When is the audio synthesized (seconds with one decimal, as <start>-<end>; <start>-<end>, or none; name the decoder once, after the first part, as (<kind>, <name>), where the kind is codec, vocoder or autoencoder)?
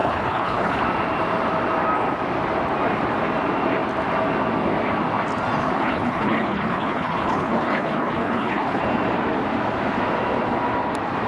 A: 0.0-0.8 (codec, HILCodec); 5.6-8.8